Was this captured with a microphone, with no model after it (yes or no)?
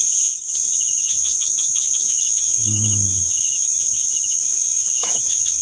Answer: no